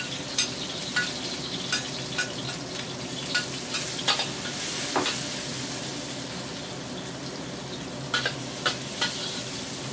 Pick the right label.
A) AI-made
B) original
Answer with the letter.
B